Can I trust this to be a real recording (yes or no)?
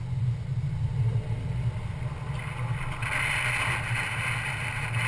yes